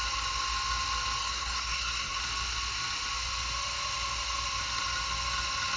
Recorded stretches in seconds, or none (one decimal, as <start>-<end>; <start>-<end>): 0.0-1.2; 2.2-5.8